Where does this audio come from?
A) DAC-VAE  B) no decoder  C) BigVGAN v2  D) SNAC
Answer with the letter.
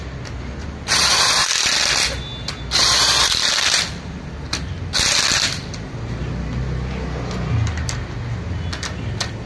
B